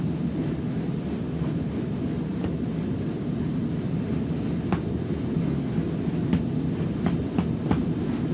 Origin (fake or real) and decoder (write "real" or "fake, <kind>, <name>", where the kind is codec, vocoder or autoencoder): real